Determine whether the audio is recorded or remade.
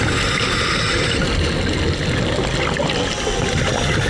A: recorded